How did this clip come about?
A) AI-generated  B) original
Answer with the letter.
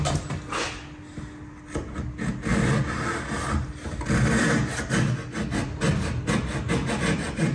B